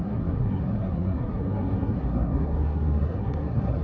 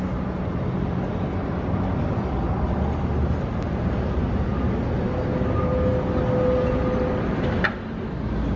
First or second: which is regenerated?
first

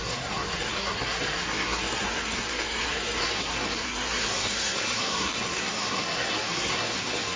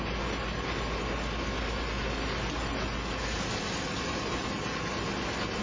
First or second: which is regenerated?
first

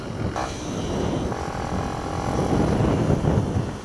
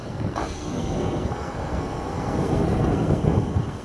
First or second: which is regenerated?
second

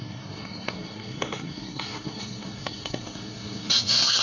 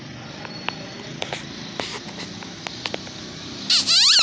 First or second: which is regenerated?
first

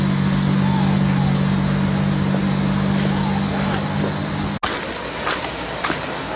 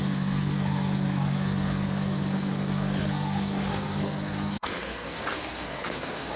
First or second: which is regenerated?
second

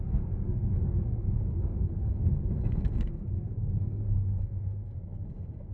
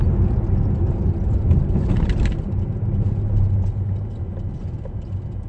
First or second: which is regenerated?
first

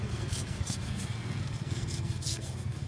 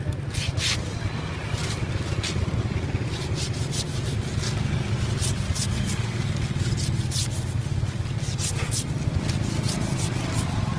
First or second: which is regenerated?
first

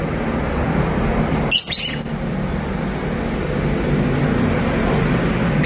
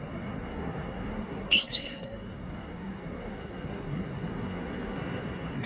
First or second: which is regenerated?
second